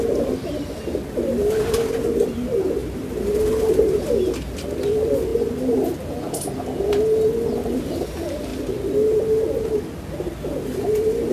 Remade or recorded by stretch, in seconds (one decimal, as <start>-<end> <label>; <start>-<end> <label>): 0.0-11.3 recorded